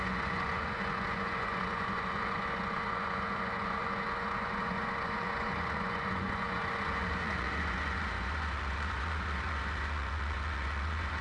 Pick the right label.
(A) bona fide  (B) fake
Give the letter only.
B